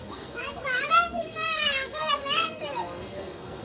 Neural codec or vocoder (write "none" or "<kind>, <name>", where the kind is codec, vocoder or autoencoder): codec, SNAC